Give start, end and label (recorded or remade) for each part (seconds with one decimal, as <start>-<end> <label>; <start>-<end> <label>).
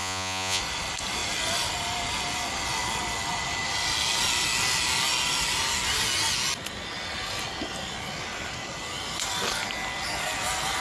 0.0-0.6 remade; 0.6-10.8 recorded